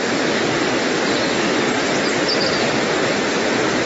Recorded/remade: recorded